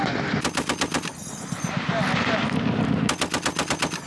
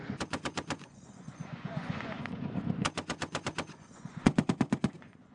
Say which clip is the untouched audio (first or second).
first